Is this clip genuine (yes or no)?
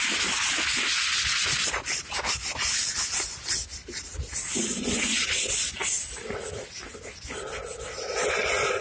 yes